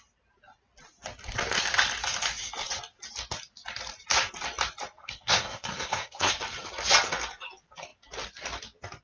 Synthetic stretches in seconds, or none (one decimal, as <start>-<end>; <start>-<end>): 5.0-6.3

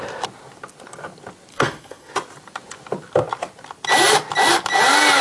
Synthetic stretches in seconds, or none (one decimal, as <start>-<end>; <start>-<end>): 1.5-2.1

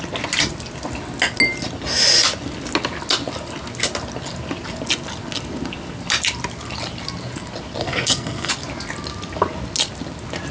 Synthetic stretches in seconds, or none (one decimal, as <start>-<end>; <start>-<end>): 7.8-8.5

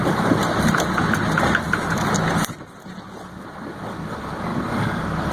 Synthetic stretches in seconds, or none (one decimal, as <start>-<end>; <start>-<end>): none

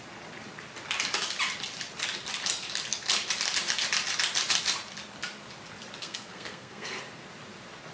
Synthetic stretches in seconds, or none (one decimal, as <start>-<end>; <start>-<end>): 6.0-7.0

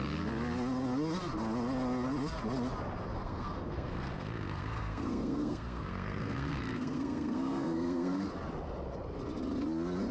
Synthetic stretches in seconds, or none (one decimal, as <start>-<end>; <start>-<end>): 3.1-8.3

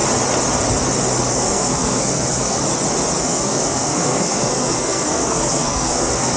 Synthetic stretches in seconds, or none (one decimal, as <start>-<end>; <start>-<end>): 1.3-2.6; 3.2-6.4

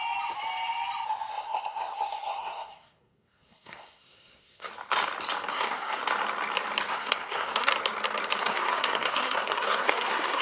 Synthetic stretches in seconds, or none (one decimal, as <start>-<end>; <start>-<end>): 1.3-4.7; 5.5-6.0; 6.9-7.7; 8.4-10.4